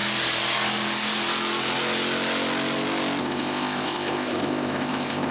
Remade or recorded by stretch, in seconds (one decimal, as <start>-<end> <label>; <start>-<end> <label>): 0.0-3.2 recorded; 3.2-5.3 remade